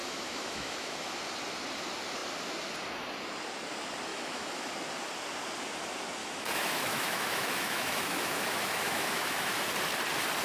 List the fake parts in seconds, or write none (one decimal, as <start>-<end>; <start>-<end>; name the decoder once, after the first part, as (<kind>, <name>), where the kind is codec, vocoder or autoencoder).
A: 0.0-1.2 (autoencoder, DAC-VAE); 4.1-4.7; 6.2-9.7